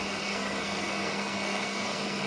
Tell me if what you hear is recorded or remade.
remade